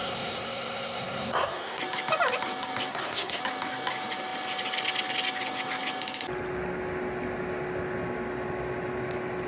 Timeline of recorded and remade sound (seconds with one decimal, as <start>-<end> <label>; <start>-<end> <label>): 0.0-1.8 remade; 1.8-2.9 recorded; 2.9-3.4 remade; 3.4-9.5 recorded